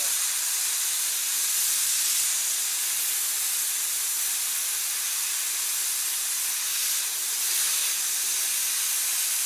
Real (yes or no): yes